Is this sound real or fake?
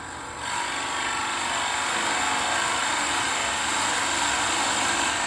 real